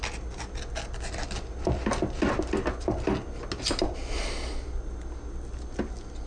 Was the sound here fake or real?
real